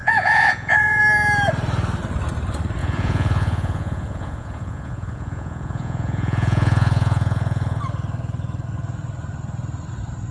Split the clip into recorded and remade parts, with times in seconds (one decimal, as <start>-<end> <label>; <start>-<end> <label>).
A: 0.0-1.0 remade; 1.0-2.8 recorded; 2.8-7.8 remade; 7.8-10.3 recorded